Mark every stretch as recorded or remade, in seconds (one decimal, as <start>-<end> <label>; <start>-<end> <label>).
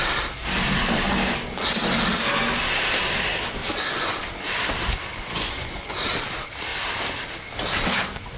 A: 0.0-3.6 recorded; 3.6-4.2 remade; 4.2-5.1 recorded; 5.1-6.0 remade; 6.0-8.4 recorded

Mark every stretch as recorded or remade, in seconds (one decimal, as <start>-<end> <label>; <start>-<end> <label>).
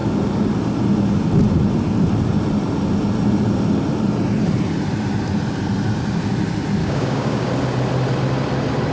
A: 0.0-6.8 recorded; 6.8-7.5 remade; 7.5-8.9 recorded